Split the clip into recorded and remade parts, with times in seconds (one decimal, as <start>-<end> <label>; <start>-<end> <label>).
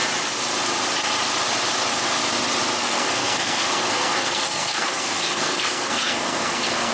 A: 0.0-2.8 recorded; 2.8-6.9 remade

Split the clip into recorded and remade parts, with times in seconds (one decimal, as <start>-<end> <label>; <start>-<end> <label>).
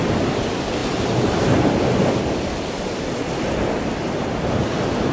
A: 0.0-5.1 recorded